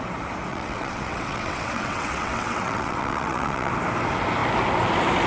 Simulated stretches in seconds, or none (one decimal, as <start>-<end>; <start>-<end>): 0.5-3.7